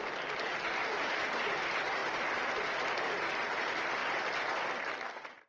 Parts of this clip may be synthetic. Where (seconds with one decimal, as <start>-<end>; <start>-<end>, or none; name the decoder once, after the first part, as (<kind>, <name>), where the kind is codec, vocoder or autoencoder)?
none